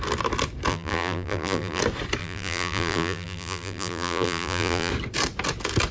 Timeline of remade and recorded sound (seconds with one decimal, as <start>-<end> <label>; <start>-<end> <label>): 0.0-0.7 recorded; 0.7-1.8 remade; 1.8-2.2 recorded; 2.2-4.9 remade; 4.9-5.9 recorded